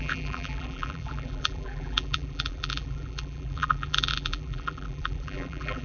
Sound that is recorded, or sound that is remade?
remade